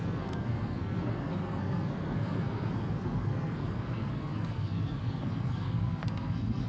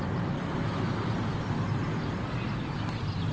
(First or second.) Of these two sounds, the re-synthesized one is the first